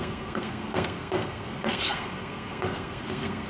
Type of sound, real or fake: fake